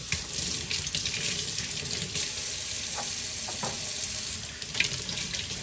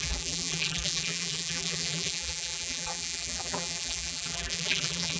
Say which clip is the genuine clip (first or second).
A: first